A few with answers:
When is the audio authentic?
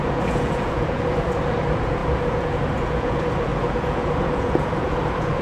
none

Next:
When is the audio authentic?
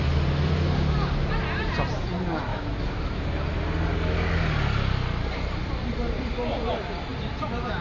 0.0-2.5; 3.2-7.8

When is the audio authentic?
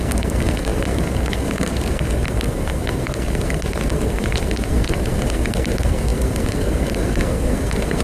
none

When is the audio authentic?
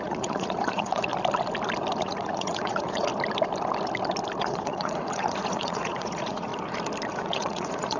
1.1-2.0; 3.1-4.4; 6.5-7.1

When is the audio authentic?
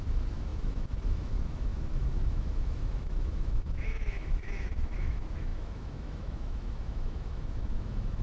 none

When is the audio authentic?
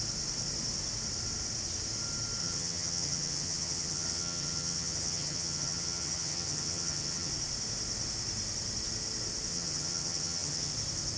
0.0-2.4; 7.3-9.5; 10.7-11.2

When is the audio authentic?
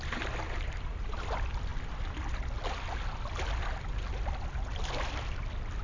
0.0-5.8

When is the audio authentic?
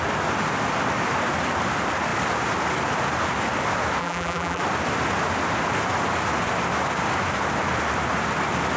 0.0-4.0; 4.6-8.8